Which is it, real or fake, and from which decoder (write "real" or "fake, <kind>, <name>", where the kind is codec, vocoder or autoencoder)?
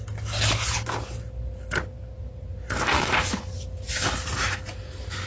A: real